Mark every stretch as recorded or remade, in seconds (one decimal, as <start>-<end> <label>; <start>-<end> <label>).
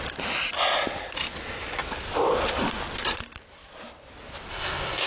0.0-4.5 recorded; 4.5-5.1 remade